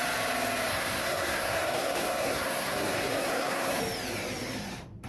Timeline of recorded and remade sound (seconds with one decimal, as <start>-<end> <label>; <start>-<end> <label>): 0.0-0.7 recorded; 0.7-3.8 remade; 3.8-5.1 recorded